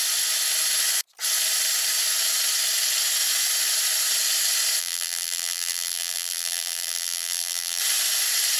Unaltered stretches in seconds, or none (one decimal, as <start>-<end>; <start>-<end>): 0.0-4.8; 7.8-8.6